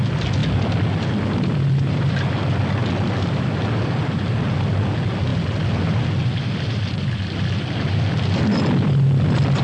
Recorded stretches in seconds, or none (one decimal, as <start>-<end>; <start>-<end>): 0.0-5.3; 5.9-9.6